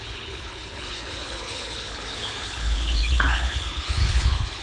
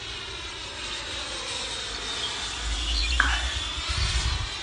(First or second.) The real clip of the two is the second